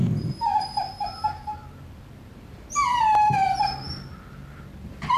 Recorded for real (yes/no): yes